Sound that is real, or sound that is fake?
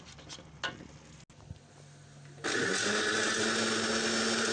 real